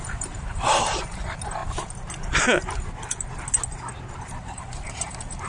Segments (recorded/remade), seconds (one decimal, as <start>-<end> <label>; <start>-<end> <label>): 0.0-1.6 remade; 1.6-4.3 recorded; 4.3-5.5 remade